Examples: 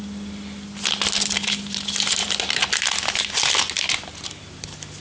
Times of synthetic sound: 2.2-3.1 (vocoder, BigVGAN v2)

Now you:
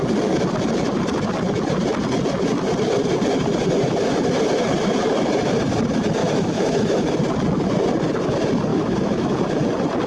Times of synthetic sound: 6.2-7.2 (autoencoder, DAC-VAE); 8.7-9.4

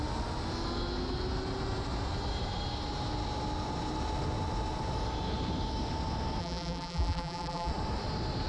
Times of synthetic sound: 6.4-7.7 (vocoder, BigVGAN v2)

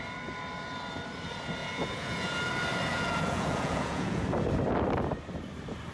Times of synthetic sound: 1.6-2.5 (vocoder, Vocos); 2.9-4.2

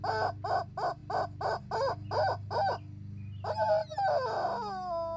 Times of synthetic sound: none

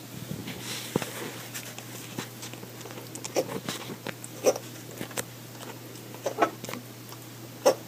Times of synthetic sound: none

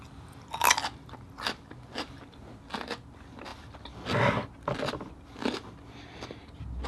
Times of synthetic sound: none